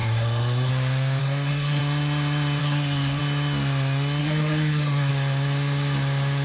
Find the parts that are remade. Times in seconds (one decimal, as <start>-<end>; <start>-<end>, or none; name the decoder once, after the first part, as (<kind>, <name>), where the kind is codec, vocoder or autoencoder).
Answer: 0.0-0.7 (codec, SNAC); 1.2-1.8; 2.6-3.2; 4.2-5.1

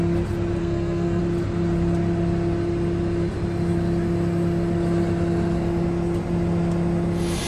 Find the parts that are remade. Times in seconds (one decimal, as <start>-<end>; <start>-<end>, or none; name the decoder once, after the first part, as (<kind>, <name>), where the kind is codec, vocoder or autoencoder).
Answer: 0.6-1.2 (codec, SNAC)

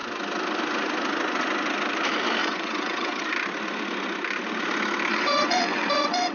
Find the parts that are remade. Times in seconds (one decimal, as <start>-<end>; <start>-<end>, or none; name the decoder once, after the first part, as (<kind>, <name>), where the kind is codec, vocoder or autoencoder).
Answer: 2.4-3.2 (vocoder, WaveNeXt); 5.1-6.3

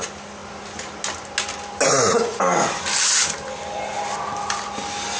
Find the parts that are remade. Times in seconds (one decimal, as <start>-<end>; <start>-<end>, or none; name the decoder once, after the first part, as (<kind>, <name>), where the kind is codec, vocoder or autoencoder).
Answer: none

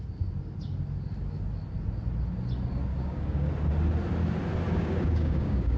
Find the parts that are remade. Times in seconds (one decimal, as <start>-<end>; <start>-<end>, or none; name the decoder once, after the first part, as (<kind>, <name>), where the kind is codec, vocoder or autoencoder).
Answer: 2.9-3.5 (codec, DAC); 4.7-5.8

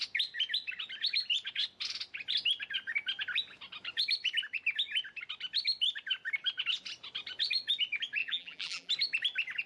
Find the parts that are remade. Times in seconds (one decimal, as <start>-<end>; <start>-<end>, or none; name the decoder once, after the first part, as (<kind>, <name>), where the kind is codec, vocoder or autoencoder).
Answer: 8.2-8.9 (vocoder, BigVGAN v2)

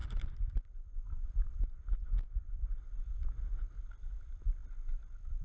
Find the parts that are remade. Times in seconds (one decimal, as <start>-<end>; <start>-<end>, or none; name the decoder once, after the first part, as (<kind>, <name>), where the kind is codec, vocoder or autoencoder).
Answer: 0.0-4.6 (vocoder, BigVGAN v2)